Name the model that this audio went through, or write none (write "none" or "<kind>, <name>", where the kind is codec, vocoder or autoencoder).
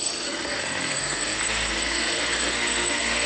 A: codec, SNAC